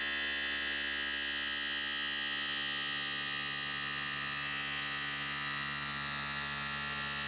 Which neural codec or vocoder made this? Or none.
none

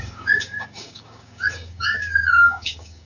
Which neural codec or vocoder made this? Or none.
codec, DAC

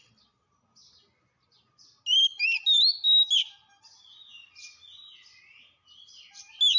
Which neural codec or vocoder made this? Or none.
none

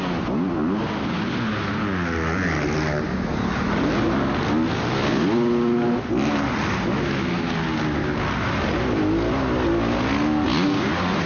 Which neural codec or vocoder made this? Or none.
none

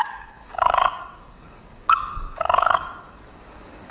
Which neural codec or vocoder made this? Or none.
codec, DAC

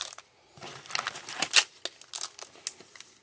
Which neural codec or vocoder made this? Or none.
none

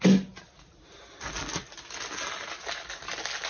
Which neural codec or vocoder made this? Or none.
none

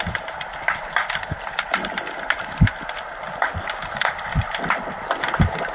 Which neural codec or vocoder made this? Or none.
none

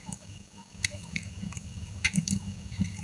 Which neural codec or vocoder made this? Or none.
codec, DAC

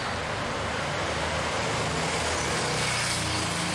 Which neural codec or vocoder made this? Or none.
none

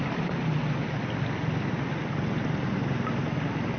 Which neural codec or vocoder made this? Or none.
none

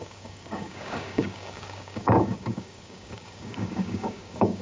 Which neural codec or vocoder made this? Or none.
codec, DAC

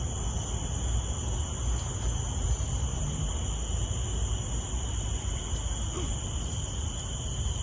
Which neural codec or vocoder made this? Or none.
none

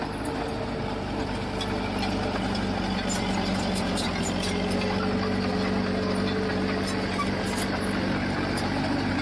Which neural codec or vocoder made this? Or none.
none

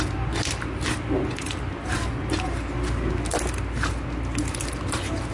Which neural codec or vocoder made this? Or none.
none